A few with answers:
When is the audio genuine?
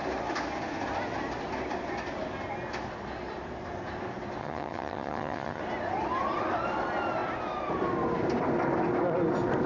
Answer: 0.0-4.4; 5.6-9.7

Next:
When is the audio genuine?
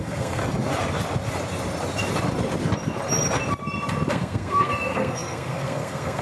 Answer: 0.4-4.1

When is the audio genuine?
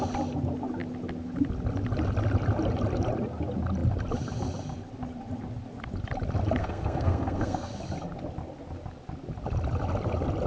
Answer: 0.0-6.6; 7.8-10.5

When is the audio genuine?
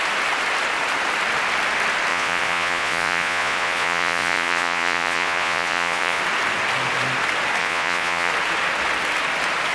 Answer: 0.0-2.1; 6.2-7.6; 8.3-9.7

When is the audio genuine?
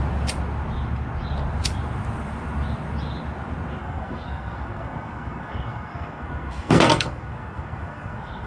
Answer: 0.0-3.8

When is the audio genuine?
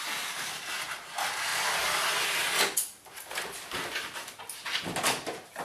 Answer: 0.0-5.6